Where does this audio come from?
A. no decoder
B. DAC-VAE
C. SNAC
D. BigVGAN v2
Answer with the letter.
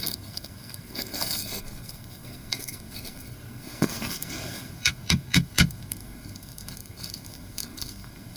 C